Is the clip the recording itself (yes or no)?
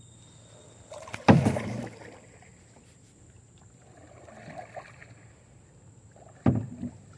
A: yes